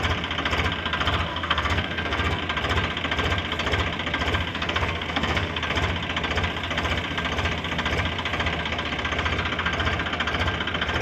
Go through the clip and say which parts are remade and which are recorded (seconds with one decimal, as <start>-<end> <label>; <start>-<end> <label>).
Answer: 0.0-1.3 recorded; 1.3-2.4 remade; 2.4-4.5 recorded; 4.5-5.6 remade; 5.6-11.0 recorded